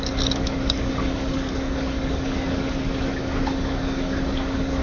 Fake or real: fake